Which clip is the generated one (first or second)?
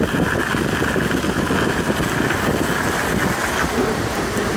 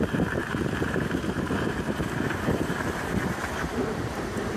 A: second